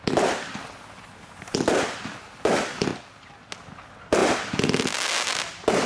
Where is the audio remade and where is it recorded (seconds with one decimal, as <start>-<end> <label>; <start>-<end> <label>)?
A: 0.0-5.9 recorded